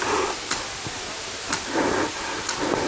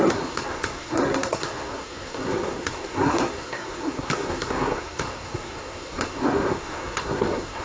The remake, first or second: second